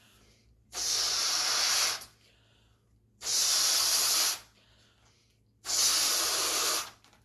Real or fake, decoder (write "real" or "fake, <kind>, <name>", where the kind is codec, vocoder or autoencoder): real